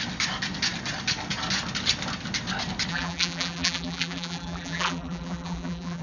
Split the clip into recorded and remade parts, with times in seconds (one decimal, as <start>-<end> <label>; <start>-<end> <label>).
0.0-2.9 recorded; 2.9-6.0 remade